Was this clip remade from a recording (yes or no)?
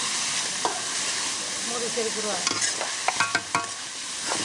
no